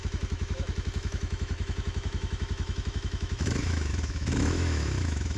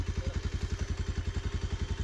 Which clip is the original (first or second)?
second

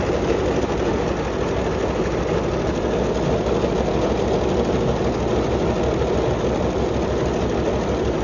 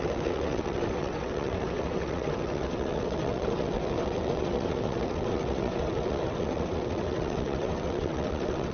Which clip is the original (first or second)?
first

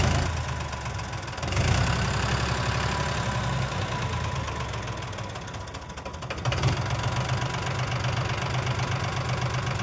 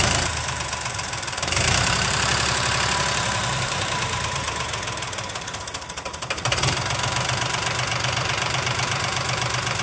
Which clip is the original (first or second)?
first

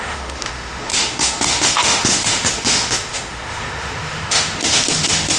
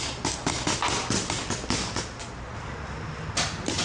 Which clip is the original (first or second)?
second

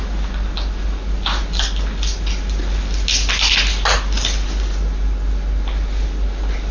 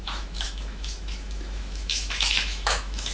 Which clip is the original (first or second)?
first